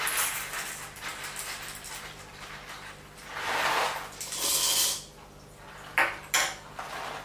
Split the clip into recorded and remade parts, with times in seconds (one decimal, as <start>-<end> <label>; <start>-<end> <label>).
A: 0.0-7.2 recorded